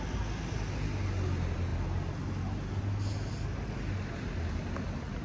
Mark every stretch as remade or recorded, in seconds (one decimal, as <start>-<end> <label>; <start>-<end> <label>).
0.0-5.2 recorded